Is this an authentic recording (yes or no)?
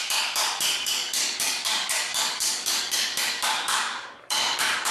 no